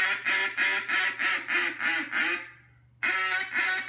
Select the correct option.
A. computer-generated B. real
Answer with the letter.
B